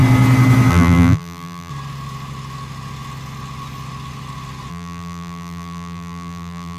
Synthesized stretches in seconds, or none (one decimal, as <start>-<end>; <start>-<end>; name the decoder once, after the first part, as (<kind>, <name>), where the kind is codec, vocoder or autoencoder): 0.7-1.7 (vocoder, BigVGAN v2); 4.7-6.8